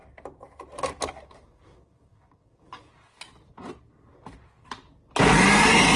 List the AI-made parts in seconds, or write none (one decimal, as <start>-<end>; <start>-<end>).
1.1-2.9